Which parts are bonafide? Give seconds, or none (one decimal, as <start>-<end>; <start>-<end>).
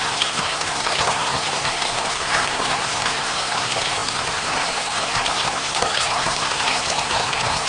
none